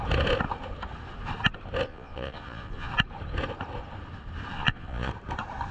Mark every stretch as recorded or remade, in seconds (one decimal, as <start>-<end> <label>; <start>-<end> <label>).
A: 0.0-1.9 recorded; 1.9-2.9 remade; 2.9-4.5 recorded; 4.5-5.1 remade; 5.1-5.7 recorded